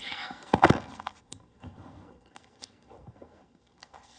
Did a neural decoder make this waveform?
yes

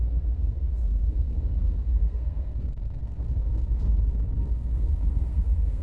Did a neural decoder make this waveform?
yes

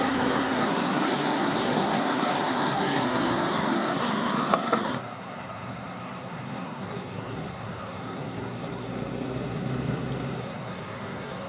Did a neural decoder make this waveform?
yes